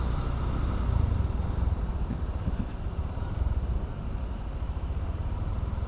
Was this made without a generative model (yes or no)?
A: no